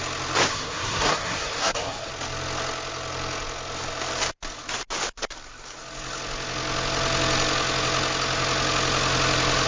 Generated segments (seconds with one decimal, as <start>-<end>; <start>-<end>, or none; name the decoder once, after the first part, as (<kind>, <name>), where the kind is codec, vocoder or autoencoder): 0.5-2.1 (codec, SNAC)